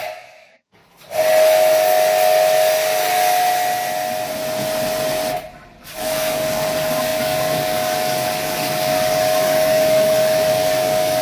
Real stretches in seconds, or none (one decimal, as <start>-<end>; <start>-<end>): 0.8-5.8